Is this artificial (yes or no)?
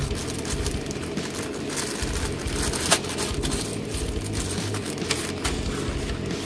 no